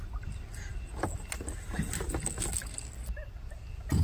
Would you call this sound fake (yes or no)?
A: no